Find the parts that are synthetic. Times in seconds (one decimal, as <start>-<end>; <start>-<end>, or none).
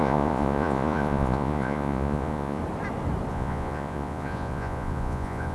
0.0-2.6; 3.3-5.5